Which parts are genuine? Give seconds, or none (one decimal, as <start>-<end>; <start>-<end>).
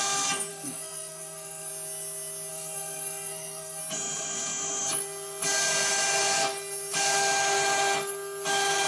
0.0-0.5; 1.7-2.5; 3.8-8.9